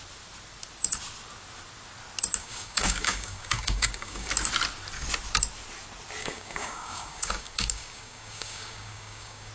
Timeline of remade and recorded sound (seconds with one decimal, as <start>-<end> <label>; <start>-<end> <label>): 0.0-2.4 recorded; 2.4-4.3 remade; 4.3-6.2 recorded; 6.2-9.5 remade